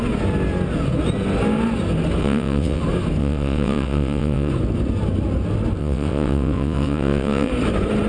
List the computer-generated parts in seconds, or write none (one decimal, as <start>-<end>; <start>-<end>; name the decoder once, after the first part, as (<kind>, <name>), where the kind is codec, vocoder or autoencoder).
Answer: 2.2-2.8 (vocoder, WaveNeXt); 3.2-4.5; 5.8-7.5